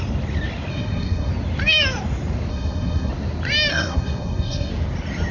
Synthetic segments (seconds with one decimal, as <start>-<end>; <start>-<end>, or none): 0.7-1.3; 2.5-3.1; 3.7-4.7